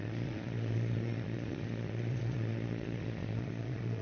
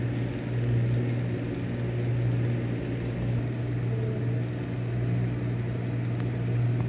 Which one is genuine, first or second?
second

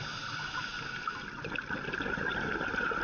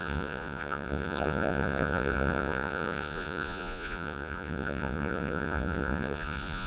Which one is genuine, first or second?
first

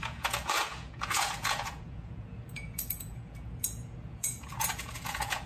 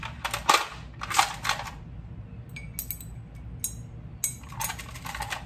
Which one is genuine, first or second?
second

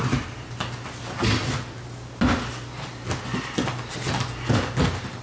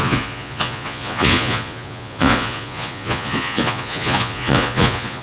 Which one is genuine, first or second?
first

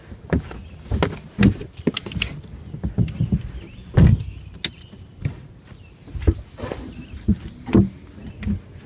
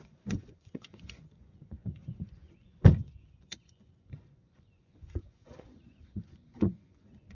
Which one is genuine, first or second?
first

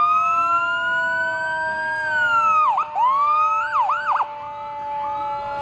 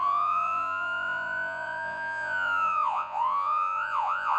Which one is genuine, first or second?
first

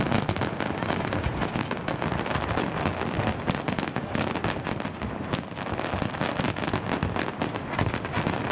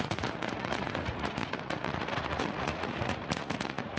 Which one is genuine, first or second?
first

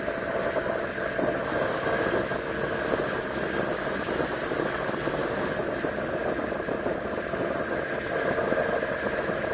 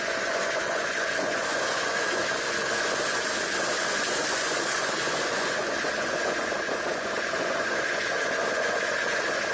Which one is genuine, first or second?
first